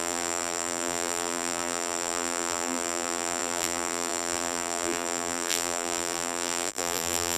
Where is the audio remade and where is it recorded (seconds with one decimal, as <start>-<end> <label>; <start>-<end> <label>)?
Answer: 0.0-7.4 remade